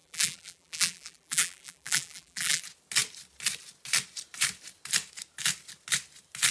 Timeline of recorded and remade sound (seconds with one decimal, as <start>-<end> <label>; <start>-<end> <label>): 0.0-2.6 remade; 2.6-6.5 recorded